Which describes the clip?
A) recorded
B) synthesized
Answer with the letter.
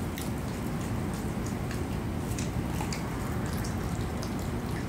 A